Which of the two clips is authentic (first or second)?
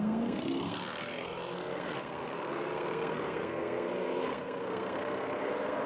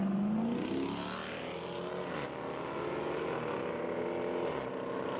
second